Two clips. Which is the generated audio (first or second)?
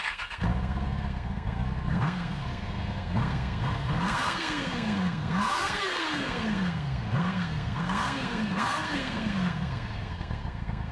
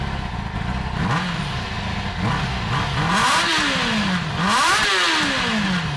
first